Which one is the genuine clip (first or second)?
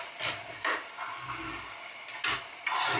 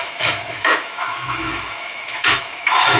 first